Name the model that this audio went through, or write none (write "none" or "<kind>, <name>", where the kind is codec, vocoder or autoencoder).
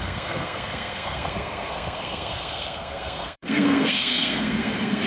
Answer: codec, SNAC